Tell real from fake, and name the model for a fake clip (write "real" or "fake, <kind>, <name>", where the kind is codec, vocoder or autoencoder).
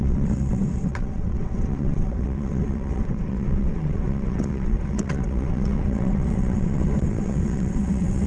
fake, vocoder, WaveNeXt